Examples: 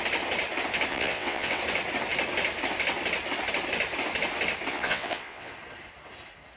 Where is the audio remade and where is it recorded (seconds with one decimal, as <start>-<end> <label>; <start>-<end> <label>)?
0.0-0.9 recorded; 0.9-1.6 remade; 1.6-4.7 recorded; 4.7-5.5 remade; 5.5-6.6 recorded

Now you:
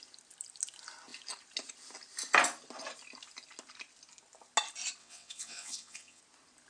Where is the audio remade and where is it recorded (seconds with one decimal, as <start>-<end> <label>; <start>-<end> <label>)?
0.0-5.0 recorded; 5.0-6.2 remade; 6.2-6.7 recorded

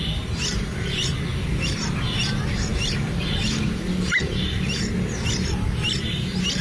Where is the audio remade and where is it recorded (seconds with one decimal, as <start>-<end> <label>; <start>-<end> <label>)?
0.0-6.6 recorded

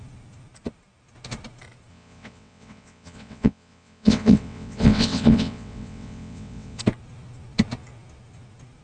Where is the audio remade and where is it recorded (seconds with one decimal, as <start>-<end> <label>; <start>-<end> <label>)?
0.0-1.9 recorded; 1.9-6.8 remade; 6.8-8.8 recorded

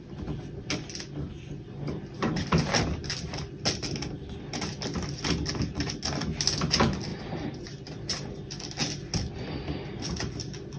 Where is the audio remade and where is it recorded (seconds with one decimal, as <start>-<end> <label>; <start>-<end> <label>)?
0.0-10.8 recorded